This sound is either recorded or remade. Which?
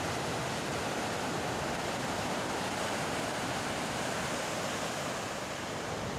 remade